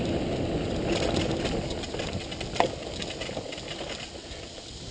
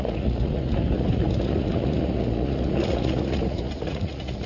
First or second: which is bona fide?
first